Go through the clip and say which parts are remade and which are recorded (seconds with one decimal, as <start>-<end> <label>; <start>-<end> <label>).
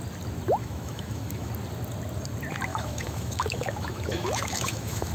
0.0-0.6 recorded; 0.6-1.5 remade; 1.5-2.7 recorded; 2.7-5.1 remade